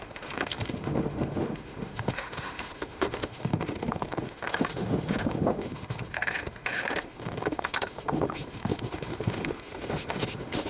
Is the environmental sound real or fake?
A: fake